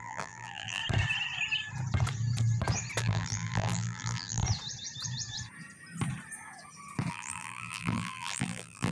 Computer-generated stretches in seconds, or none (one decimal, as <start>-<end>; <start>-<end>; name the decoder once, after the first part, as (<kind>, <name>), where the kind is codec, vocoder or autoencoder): 0.0-0.8 (vocoder, BigVGAN v2); 3.0-4.4; 7.1-8.9